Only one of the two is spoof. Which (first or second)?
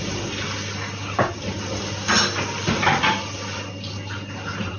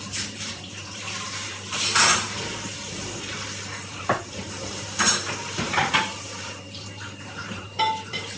second